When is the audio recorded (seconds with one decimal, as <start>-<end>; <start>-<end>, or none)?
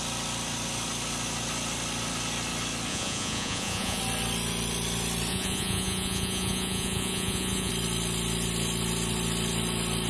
0.0-2.9; 4.0-5.3; 7.7-10.1